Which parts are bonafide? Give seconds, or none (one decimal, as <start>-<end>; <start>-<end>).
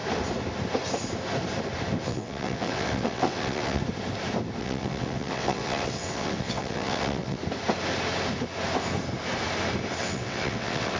0.0-2.0; 3.8-4.6; 7.4-10.0